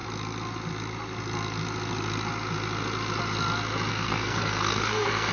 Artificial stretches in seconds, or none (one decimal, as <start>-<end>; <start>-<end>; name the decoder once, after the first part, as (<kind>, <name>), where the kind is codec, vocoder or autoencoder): 3.9-5.3 (codec, SNAC)